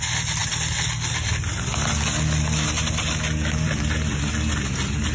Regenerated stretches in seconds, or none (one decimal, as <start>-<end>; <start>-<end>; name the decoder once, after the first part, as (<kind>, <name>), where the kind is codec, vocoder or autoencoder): none

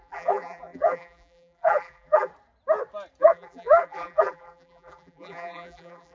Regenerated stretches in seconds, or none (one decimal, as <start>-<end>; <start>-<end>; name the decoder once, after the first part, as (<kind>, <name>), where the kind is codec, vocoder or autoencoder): 0.0-2.3 (vocoder, BigVGAN v2); 3.2-6.1

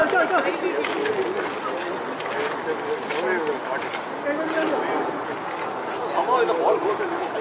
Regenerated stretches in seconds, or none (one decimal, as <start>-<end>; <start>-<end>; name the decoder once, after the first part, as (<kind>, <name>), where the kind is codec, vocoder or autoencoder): 3.6-5.2 (vocoder, BigVGAN v2)

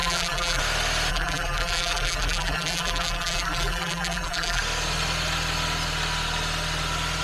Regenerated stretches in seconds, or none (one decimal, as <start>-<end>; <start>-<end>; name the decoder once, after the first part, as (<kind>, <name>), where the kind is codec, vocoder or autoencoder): 0.0-0.6 (vocoder, BigVGAN v2); 1.1-4.6

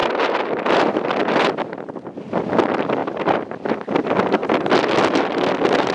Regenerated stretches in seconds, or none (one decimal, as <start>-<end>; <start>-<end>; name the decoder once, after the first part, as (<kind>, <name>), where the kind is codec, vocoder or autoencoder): 0.0-1.5 (vocoder, BigVGAN v2); 3.0-4.1

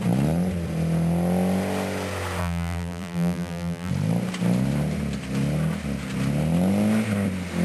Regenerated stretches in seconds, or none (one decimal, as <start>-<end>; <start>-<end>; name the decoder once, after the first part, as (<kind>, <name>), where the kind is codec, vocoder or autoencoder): 2.4-3.9 (vocoder, BigVGAN v2)

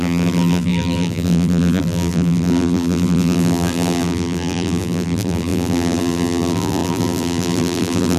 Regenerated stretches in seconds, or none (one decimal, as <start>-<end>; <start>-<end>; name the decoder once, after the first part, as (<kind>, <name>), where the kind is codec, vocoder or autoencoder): 0.0-8.2 (vocoder, BigVGAN v2)